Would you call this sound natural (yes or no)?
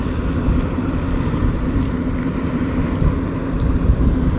yes